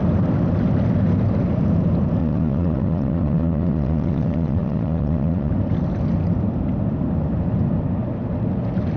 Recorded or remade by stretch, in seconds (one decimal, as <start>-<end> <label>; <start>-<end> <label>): 0.0-2.2 recorded; 2.2-5.5 remade; 5.5-9.0 recorded